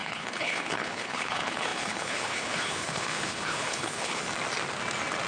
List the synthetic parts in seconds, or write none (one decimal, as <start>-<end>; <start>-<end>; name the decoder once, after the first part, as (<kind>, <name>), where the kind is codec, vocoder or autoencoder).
0.0-4.2 (codec, HILCodec)